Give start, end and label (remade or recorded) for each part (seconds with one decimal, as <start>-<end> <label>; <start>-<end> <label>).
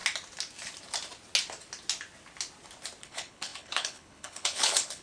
0.0-3.0 recorded; 3.0-5.0 remade